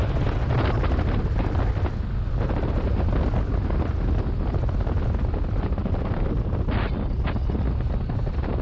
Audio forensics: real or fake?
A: real